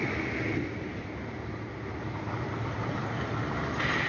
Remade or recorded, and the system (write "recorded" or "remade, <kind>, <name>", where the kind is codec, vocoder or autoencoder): recorded